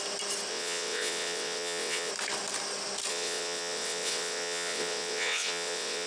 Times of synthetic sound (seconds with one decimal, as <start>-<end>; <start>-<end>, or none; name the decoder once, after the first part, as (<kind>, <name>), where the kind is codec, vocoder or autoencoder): 0.5-2.1 (vocoder, WaveNeXt); 3.1-6.1